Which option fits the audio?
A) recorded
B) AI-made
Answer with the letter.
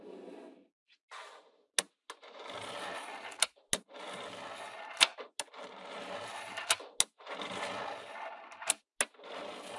A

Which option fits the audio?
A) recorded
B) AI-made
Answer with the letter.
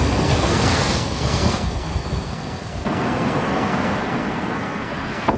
B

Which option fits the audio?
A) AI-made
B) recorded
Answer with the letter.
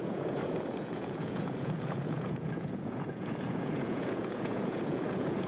A